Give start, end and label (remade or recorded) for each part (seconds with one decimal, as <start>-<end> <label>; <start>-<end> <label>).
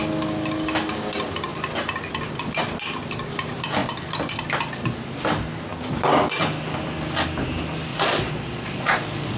0.0-7.9 recorded; 7.9-9.4 remade